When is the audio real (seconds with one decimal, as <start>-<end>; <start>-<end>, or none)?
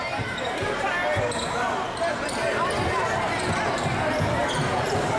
1.0-4.1